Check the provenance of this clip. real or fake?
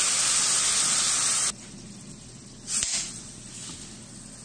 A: real